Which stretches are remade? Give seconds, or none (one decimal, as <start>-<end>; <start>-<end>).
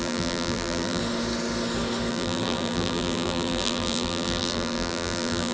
0.0-1.0; 2.1-5.5